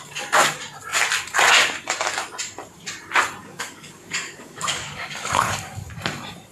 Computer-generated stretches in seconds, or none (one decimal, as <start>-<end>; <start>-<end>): 3.4-5.9